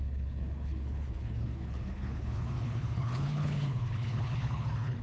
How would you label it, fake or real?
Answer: fake